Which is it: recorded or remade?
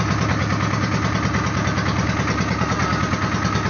recorded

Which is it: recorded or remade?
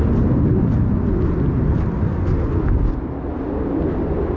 recorded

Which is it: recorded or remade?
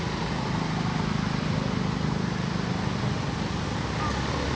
recorded